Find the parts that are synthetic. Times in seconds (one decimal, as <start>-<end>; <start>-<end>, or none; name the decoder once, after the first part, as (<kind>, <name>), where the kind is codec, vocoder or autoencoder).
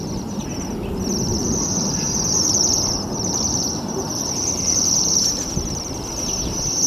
1.4-5.5 (vocoder, BigVGAN v2)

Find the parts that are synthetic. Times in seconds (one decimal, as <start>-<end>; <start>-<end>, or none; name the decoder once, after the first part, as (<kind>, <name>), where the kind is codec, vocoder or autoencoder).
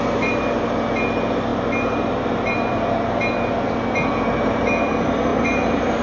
0.0-6.0 (vocoder, BigVGAN v2)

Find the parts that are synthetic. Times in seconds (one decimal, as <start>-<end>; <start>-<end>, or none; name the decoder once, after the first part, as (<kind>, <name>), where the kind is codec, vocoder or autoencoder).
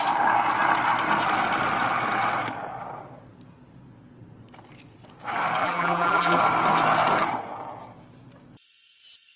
5.6-6.4 (vocoder, BigVGAN v2)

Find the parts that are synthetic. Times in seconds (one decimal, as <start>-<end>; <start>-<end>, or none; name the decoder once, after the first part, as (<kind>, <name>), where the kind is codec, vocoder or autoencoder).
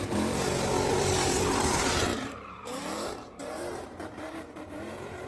1.0-5.3 (vocoder, BigVGAN v2)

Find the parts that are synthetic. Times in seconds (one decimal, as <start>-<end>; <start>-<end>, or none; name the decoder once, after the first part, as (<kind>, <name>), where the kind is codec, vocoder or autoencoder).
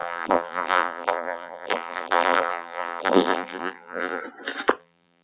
0.0-4.2 (vocoder, BigVGAN v2); 4.8-5.2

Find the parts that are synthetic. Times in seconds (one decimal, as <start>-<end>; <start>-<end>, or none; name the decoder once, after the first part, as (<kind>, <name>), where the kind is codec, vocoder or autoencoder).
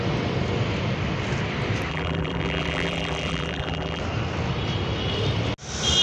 1.9-4.0 (vocoder, BigVGAN v2)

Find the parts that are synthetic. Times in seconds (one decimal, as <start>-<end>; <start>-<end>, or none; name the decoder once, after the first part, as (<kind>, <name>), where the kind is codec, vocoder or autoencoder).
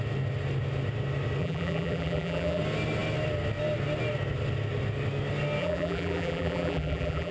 1.4-2.6 (vocoder, BigVGAN v2); 5.6-7.3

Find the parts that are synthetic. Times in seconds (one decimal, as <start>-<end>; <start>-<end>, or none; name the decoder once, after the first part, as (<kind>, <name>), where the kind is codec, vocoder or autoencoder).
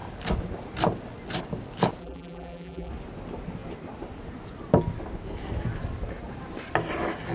2.0-2.9 (vocoder, BigVGAN v2)